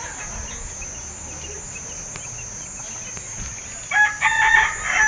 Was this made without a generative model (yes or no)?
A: yes